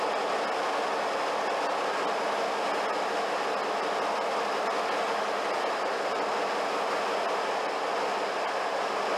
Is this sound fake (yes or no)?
no